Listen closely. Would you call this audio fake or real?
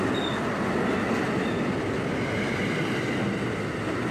real